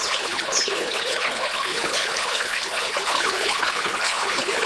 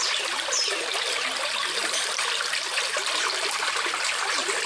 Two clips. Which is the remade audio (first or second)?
first